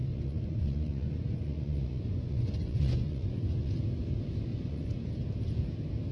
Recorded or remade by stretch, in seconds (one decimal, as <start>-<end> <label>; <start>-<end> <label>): 0.0-3.7 remade; 3.7-4.5 recorded; 4.5-5.1 remade; 5.1-6.1 recorded